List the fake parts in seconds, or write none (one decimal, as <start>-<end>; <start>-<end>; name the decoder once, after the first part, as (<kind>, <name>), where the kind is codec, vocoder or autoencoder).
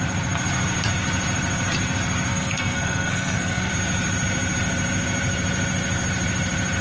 2.3-3.7 (codec, SNAC)